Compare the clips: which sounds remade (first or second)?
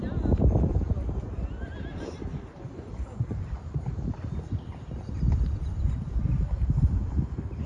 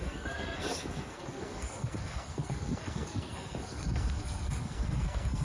second